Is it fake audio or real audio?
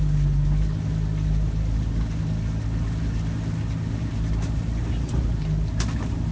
real